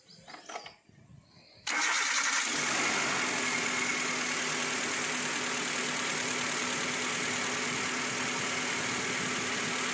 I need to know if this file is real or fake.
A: real